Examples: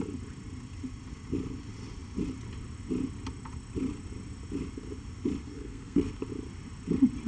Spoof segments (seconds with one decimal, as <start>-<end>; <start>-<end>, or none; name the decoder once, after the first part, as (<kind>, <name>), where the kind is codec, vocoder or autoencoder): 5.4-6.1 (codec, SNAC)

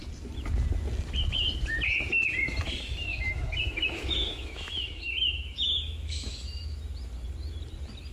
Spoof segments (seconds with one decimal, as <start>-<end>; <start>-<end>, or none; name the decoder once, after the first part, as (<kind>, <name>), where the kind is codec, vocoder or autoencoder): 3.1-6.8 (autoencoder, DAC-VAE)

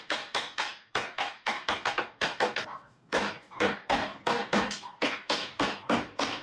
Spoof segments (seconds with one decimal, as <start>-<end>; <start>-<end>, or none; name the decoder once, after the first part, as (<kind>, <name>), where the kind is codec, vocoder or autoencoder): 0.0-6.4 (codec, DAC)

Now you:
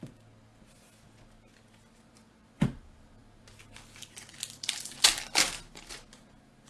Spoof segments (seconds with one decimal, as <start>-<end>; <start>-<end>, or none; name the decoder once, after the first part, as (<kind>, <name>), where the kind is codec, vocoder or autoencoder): none

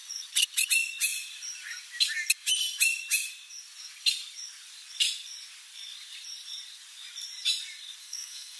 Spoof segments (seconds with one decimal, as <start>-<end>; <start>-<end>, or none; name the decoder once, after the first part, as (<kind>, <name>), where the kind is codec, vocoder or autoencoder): 8.0-8.6 (codec, SNAC)

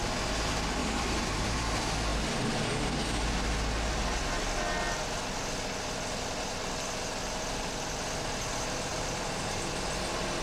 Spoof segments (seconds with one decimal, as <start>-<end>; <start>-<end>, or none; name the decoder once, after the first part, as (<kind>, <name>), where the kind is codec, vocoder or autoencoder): 0.8-1.7 (vocoder, BigVGAN v2); 8.9-9.6

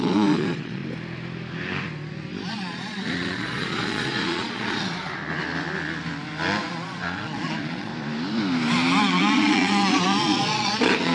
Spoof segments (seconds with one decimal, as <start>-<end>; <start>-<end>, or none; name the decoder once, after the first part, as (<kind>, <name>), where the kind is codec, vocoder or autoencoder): 0.0-0.8 (vocoder, Vocos); 2.5-5.2; 6.7-7.9; 9.0-11.1